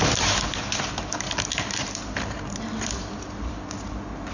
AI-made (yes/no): no